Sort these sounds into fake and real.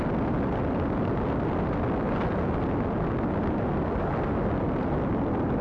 real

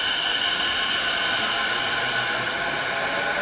real